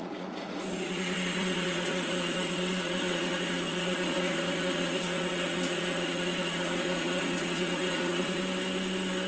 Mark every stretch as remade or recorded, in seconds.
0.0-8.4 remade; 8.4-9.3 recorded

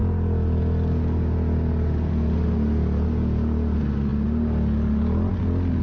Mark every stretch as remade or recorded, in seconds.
0.0-5.8 recorded

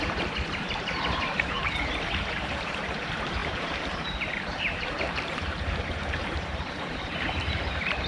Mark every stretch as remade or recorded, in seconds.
0.0-8.1 remade

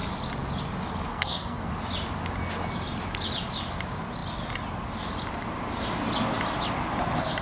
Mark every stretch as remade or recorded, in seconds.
0.0-1.1 recorded; 1.1-1.7 remade; 1.7-7.4 recorded